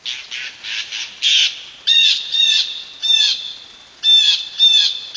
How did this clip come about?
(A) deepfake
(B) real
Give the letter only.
B